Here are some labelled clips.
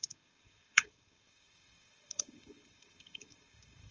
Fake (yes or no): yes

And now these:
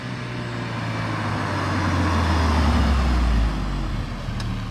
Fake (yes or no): no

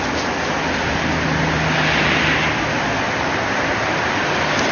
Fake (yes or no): no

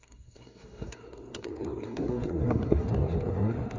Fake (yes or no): yes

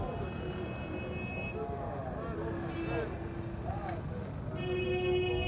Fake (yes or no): no